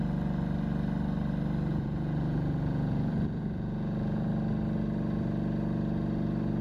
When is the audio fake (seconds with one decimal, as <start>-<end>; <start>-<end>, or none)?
1.7-4.3